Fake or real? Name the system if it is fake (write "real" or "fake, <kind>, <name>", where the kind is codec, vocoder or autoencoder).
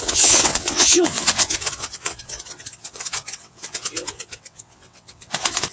fake, vocoder, WaveNeXt